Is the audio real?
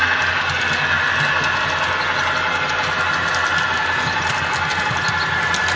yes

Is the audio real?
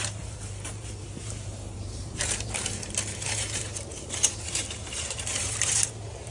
no